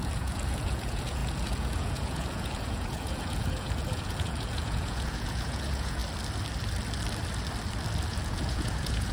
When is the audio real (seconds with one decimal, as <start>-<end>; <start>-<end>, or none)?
6.0-8.1